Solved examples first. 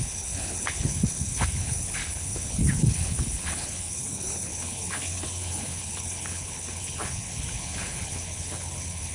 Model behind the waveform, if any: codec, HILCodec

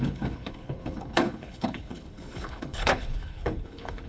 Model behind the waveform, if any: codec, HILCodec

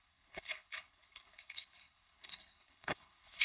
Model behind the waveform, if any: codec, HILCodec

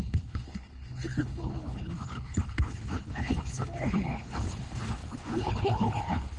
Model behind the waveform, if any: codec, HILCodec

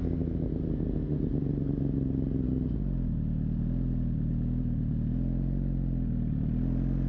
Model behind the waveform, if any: none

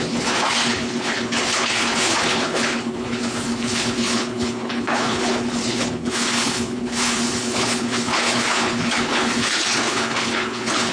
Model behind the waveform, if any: codec, HILCodec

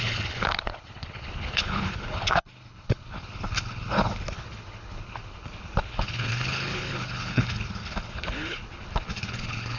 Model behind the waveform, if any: codec, HILCodec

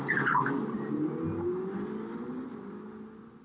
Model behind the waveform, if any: none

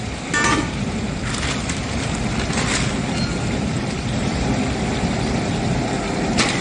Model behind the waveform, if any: none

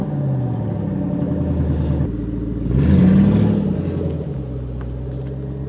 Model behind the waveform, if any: none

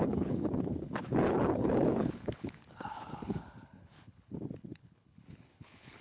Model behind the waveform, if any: codec, HILCodec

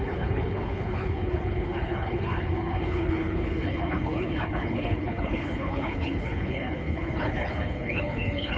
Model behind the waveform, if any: codec, HILCodec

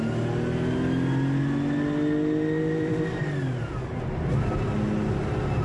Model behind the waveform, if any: none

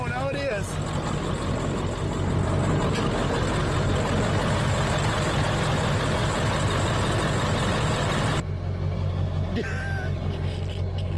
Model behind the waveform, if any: none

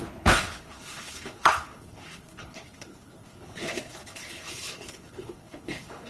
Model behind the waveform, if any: codec, HILCodec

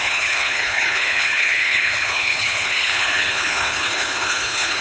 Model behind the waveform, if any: codec, HILCodec